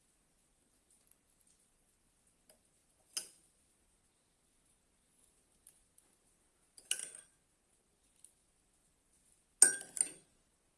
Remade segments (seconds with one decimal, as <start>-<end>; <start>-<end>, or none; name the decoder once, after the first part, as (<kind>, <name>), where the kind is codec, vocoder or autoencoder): none